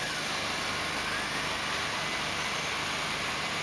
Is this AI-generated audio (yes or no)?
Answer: no